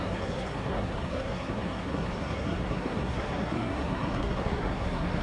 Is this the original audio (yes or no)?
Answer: no